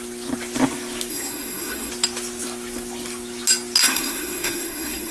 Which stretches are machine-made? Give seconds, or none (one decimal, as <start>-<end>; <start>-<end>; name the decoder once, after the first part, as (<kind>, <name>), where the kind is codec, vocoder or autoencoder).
1.1-1.9 (codec, SNAC); 3.8-5.1